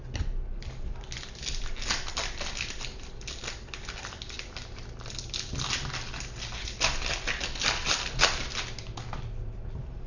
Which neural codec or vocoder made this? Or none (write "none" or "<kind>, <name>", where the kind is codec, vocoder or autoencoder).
none